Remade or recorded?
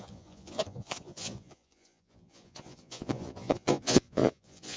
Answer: remade